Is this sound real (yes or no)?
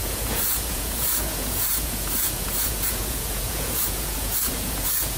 no